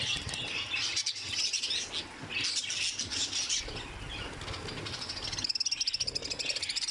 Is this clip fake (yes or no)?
no